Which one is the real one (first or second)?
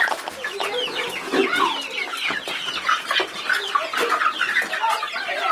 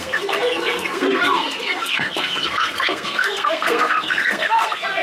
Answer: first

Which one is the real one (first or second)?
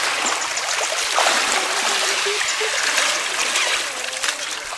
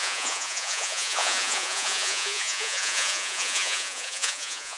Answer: first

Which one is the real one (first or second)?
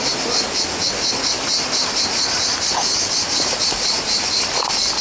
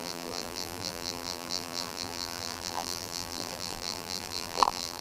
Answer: first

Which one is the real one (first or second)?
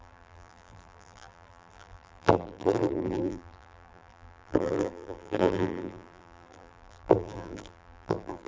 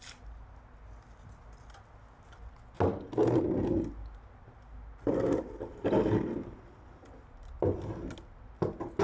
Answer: second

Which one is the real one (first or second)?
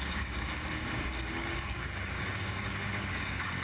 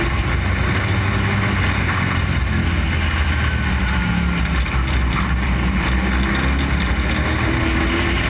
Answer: second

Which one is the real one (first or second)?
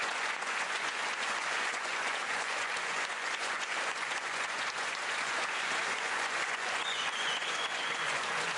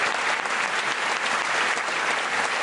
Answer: second